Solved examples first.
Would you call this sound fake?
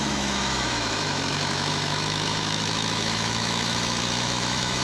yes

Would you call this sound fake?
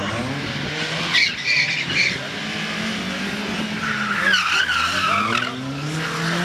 no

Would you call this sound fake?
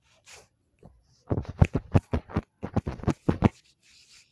yes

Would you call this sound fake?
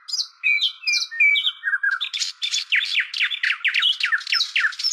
no